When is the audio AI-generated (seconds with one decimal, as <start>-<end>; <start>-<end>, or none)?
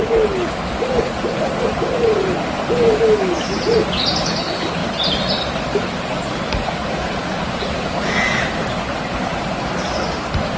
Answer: none